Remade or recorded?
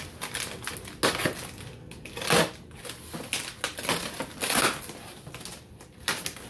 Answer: recorded